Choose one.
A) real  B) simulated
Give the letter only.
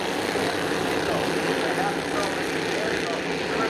A